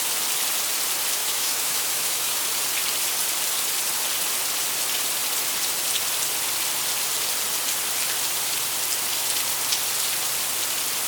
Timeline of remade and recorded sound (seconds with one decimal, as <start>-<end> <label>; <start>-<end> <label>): 0.0-1.2 recorded; 1.2-2.5 remade; 2.5-11.1 recorded